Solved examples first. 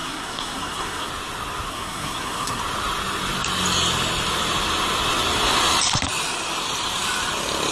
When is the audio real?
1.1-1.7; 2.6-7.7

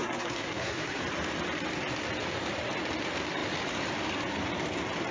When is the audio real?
1.0-5.1